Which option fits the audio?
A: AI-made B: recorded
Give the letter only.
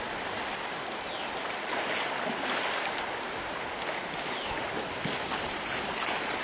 B